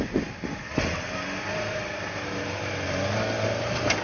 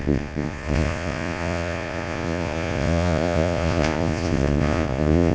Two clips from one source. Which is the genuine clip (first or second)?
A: first